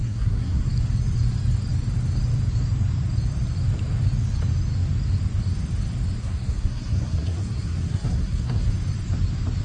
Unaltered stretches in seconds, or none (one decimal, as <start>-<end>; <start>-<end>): 0.7-6.2; 8.7-9.6